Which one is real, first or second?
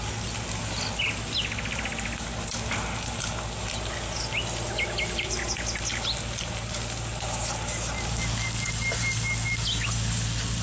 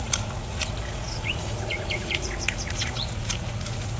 first